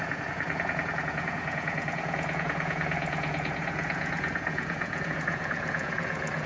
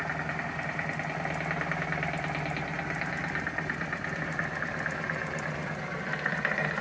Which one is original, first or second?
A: second